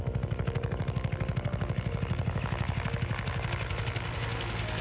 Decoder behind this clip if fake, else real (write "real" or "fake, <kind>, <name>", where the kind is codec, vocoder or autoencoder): real